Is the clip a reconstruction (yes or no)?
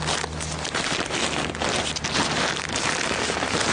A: no